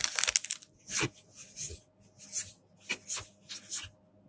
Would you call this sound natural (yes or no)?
yes